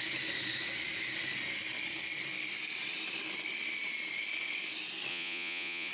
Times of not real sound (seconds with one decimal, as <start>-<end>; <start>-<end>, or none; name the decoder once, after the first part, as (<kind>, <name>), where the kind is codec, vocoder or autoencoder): 5.1-5.9 (vocoder, Vocos)